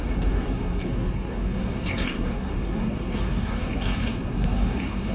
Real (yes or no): no